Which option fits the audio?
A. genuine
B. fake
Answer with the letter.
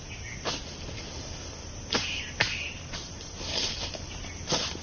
A